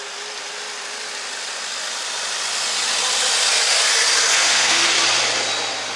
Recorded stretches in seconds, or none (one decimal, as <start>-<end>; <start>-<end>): 0.0-4.3; 4.9-6.0